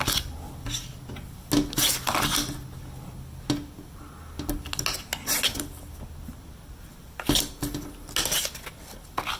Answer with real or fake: real